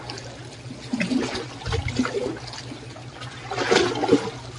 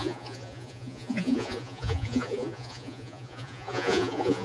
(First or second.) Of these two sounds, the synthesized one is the second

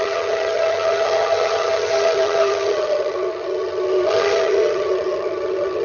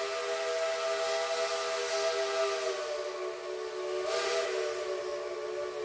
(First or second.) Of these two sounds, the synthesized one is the first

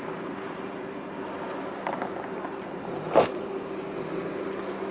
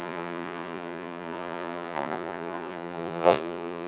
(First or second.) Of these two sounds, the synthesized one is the second